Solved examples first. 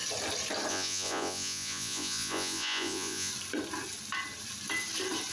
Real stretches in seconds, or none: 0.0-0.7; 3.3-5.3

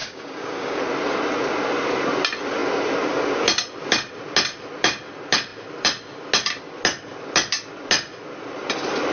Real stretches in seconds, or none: 0.8-9.1

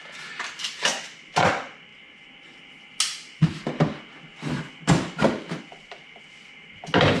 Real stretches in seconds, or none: 0.0-7.2

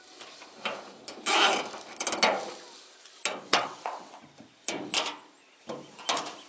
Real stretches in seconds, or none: 0.0-3.5; 4.2-6.5

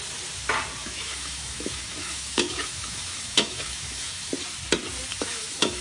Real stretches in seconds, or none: 0.0-0.8; 4.3-5.1

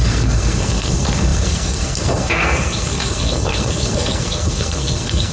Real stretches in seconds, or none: none

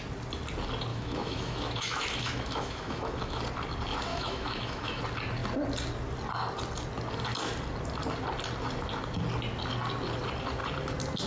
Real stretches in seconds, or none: 0.0-0.9; 3.4-4.1; 5.0-11.3

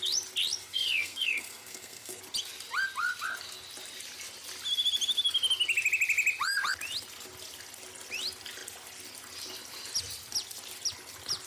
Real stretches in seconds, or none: 0.0-0.6; 2.2-11.5